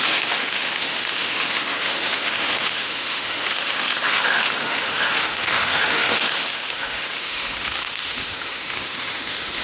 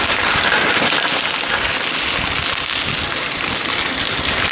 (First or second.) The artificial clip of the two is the first